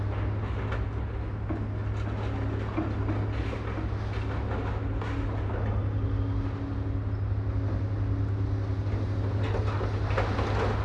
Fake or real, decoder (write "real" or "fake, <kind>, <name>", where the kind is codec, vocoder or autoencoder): real